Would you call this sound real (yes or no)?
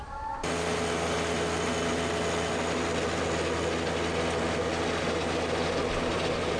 yes